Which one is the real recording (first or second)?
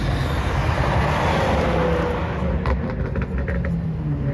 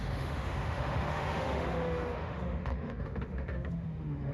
first